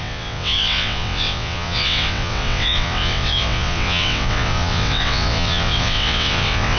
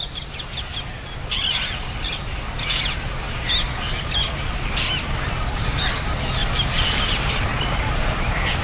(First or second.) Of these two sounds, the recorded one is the second